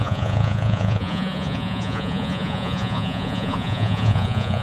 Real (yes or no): no